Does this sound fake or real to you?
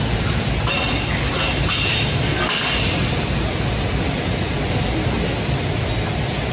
real